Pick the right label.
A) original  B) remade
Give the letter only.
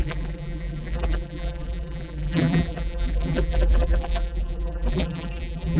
B